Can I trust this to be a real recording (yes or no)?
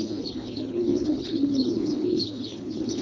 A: no